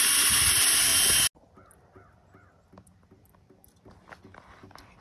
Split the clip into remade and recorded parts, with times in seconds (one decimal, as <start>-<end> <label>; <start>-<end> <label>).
0.0-5.0 recorded